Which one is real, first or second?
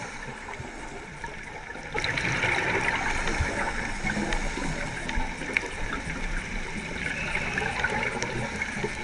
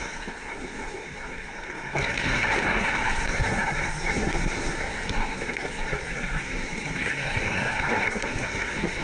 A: first